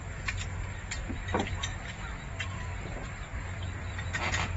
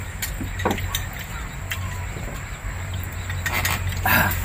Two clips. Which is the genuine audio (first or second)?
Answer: second